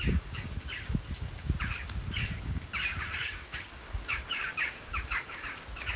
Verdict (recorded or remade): remade